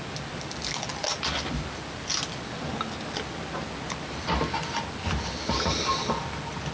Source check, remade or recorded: recorded